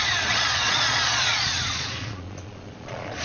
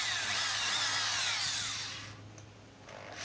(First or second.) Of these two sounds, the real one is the second